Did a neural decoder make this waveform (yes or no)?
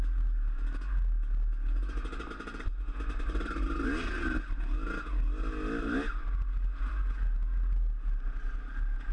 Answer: no